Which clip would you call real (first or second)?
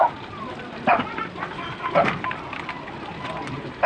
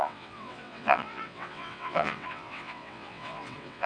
first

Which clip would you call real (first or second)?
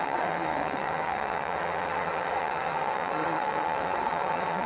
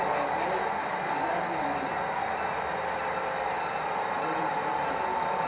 second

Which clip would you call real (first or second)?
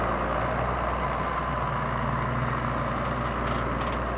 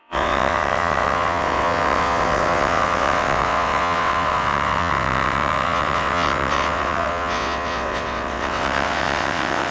first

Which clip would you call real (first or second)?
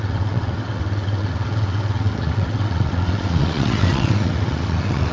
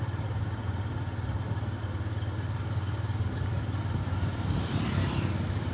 second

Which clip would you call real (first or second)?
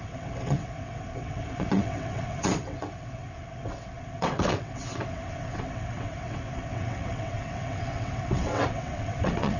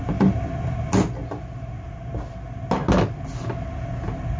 second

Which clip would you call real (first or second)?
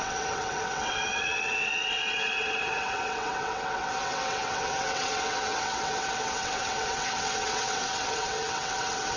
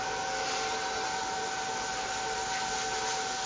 second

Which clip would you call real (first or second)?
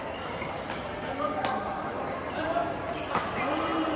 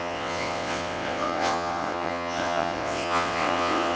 first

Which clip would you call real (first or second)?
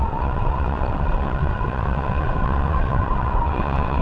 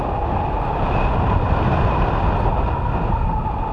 second